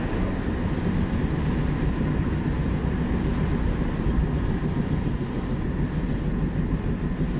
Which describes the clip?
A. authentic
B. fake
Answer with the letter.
A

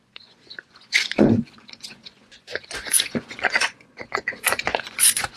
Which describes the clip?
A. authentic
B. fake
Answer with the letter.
B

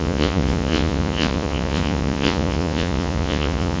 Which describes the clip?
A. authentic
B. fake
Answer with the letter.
B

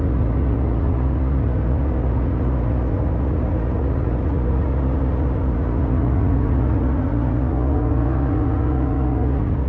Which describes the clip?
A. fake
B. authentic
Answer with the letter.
A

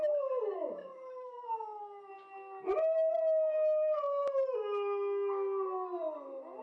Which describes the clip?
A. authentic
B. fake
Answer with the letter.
A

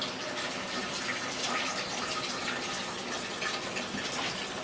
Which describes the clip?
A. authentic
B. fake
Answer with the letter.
A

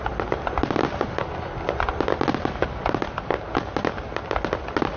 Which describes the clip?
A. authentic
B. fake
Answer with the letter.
A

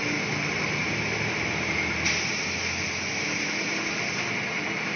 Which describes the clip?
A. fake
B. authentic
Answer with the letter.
B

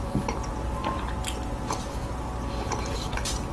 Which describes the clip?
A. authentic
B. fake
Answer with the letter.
A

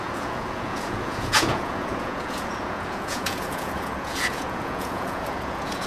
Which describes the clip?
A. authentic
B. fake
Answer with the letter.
B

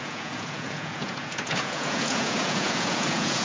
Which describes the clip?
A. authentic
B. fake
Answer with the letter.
B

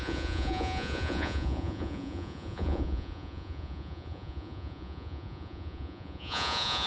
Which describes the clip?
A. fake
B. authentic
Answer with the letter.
A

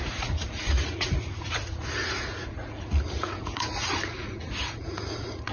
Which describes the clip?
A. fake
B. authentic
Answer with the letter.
A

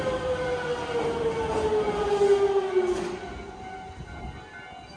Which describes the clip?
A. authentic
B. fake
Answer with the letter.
A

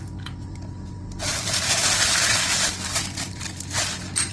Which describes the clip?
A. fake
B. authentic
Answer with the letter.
B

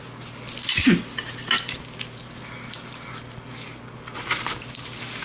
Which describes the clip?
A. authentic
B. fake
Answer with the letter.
A